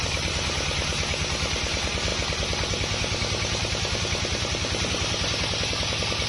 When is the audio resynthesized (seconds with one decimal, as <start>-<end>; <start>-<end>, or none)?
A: none